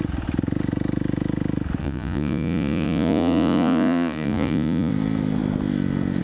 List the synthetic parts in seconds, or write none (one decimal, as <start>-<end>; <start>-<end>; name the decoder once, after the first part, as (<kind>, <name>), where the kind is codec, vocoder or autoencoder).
1.8-4.9 (vocoder, Vocos)